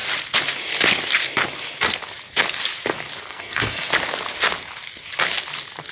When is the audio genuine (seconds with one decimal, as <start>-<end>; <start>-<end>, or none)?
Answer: 0.0-3.3; 3.9-5.9